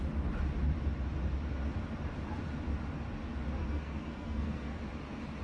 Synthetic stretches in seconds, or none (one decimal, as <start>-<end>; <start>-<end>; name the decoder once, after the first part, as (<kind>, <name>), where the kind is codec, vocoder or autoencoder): 3.6-4.8 (codec, SNAC)